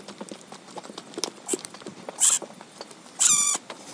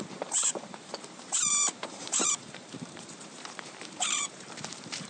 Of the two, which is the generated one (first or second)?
second